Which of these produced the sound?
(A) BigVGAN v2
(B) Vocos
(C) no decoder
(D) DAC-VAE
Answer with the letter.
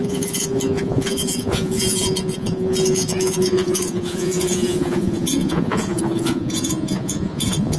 B